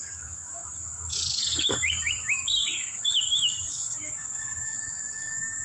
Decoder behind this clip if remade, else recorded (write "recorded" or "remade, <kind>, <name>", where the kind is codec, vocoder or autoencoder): remade, codec, DAC